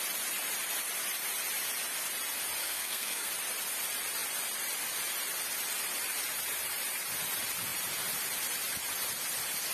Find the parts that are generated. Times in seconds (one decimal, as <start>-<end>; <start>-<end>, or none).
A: 2.6-3.3